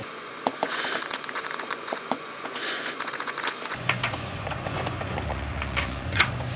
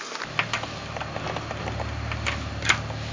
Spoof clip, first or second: first